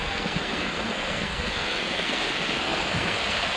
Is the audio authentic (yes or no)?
no